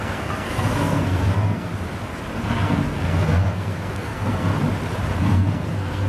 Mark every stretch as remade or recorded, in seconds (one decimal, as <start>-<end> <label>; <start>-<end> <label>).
0.0-1.7 remade; 1.7-2.3 recorded; 2.3-4.5 remade; 4.5-5.2 recorded; 5.2-6.1 remade